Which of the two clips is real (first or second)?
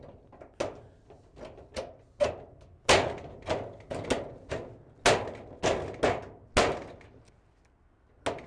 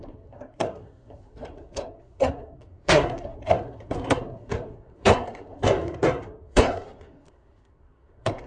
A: first